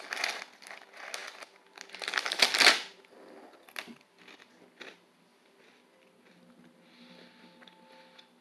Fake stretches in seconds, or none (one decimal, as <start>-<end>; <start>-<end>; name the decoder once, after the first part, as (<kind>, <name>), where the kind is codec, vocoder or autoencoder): none